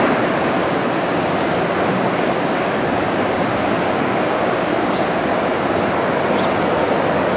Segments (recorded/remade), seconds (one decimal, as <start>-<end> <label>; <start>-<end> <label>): 0.0-0.6 recorded; 0.6-5.0 remade; 5.0-7.4 recorded